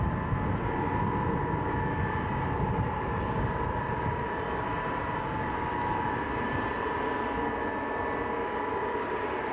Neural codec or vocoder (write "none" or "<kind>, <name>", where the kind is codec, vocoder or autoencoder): none